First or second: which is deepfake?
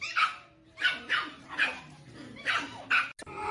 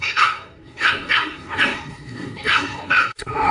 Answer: second